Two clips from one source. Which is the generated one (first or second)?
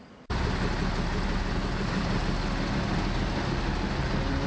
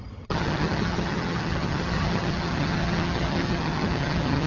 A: second